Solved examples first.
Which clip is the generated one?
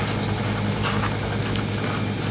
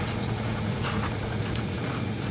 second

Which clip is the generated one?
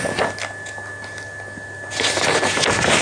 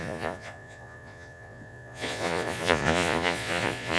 second